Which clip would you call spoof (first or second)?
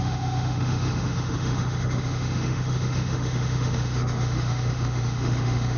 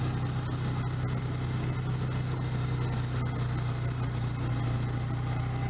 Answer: first